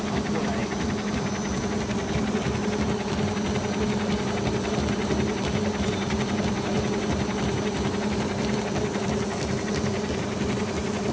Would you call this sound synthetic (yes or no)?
no